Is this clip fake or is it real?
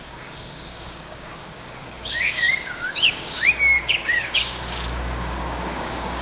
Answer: fake